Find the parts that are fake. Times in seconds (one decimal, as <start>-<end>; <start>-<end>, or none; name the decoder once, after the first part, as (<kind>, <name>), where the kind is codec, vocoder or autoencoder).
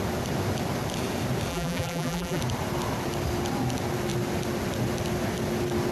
1.5-2.4 (vocoder, BigVGAN v2)